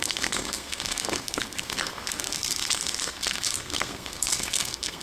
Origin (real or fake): fake